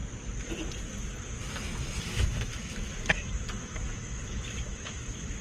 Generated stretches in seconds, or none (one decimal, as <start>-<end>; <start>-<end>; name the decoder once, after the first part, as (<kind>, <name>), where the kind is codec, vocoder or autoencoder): 2.0-5.4 (autoencoder, DAC-VAE)